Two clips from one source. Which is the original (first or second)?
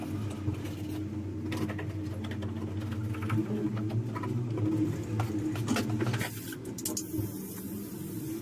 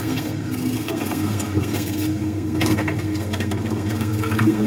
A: first